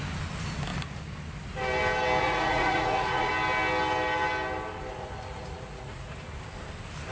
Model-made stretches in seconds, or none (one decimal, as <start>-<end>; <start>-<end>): 2.2-3.3; 4.9-6.1